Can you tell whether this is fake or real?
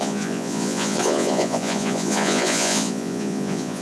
fake